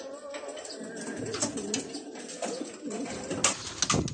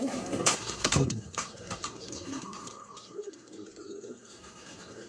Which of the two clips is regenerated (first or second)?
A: second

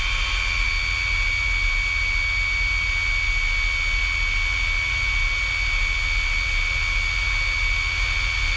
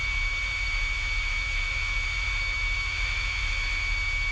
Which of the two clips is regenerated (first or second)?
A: second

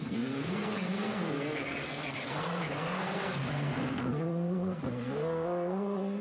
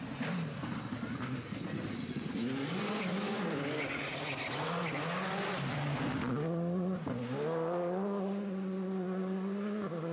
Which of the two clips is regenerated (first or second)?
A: first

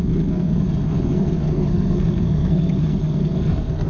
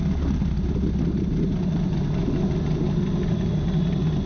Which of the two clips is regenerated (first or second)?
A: first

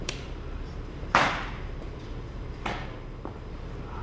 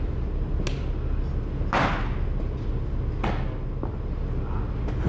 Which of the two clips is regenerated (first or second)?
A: first